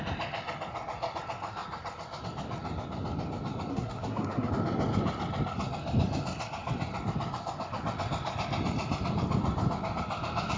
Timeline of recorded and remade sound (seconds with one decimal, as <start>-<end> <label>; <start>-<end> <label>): 0.0-3.7 recorded; 3.7-4.5 remade; 4.5-10.6 recorded